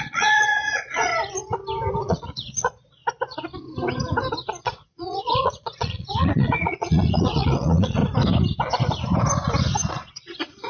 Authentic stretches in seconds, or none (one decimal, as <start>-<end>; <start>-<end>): 1.1-1.9; 3.0-4.6; 8.0-9.9